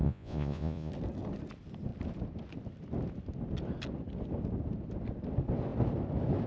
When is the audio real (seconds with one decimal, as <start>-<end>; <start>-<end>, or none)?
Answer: 0.9-6.5